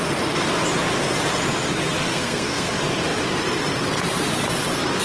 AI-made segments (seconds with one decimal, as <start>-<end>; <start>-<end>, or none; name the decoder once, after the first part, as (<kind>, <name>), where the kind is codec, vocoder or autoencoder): 2.1-2.7 (codec, SNAC)